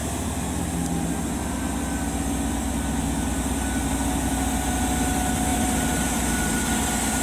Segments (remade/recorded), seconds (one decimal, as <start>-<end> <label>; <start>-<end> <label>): 0.0-5.5 recorded; 5.5-6.7 remade; 6.7-7.2 recorded